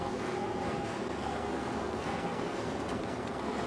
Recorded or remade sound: remade